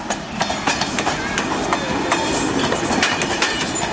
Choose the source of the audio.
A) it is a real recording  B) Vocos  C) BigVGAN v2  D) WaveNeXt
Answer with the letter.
A